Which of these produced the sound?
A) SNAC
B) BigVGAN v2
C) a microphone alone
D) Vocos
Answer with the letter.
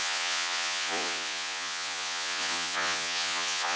D